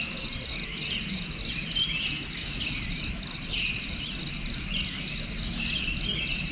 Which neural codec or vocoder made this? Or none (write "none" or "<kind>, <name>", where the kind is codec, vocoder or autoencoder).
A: none